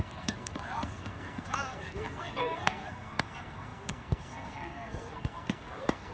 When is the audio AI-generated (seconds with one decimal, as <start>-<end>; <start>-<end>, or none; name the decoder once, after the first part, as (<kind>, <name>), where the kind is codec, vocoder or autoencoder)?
0.0-6.1 (codec, SNAC)